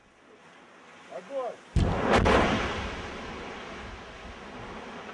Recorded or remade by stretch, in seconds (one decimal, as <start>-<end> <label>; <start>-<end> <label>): 0.0-5.1 recorded